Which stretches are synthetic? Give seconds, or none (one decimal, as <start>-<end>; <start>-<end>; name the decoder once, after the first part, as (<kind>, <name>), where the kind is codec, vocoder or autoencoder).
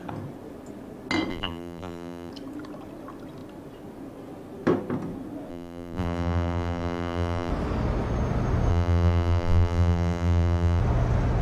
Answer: 1.3-2.3 (vocoder, BigVGAN v2); 5.5-7.5; 8.7-10.8